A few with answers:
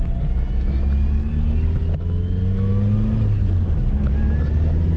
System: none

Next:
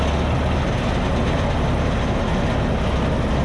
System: none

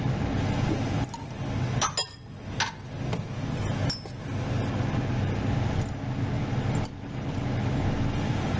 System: none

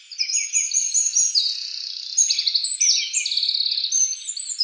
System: none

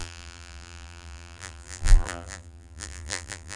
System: vocoder, BigVGAN v2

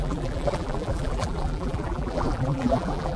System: vocoder, BigVGAN v2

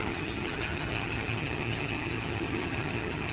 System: vocoder, HiFi-GAN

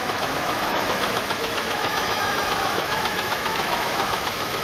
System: autoencoder, DAC-VAE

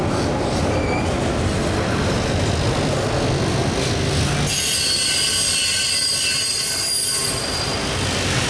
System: none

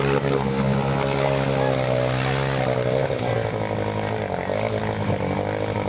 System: none